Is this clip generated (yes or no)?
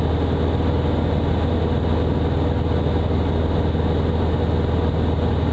no